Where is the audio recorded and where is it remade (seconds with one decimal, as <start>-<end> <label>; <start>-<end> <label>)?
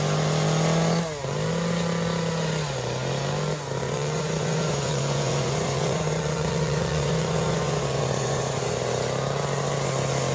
0.0-3.8 recorded; 3.8-8.7 remade; 8.7-10.3 recorded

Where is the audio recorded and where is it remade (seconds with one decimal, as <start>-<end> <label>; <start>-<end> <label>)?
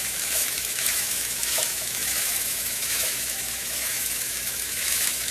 0.0-5.3 remade